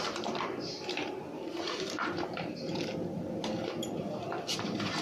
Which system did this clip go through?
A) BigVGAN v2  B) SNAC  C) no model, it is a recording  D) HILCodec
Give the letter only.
A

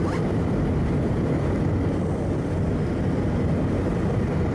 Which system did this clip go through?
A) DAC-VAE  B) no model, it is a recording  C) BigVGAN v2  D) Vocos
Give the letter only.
C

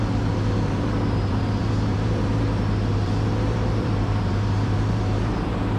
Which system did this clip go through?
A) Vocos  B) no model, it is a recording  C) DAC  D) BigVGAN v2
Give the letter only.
D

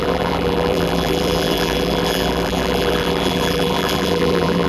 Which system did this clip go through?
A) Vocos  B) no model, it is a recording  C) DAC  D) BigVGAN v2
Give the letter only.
D